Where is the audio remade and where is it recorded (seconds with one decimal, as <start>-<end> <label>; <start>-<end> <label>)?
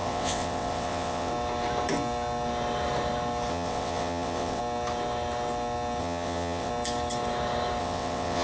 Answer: 0.0-1.3 remade; 1.3-3.5 recorded; 3.5-4.6 remade; 4.6-6.0 recorded; 6.0-6.7 remade; 6.7-7.8 recorded; 7.8-8.4 remade